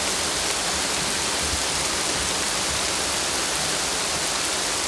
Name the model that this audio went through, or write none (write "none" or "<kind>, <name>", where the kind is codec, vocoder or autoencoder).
none